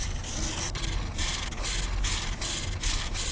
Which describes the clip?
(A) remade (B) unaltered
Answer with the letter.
B